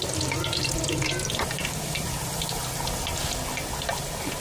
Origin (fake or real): real